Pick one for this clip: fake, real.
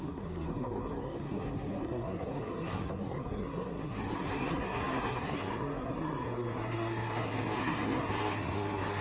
fake